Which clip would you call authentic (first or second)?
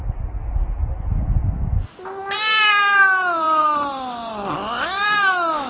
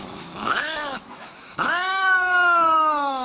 first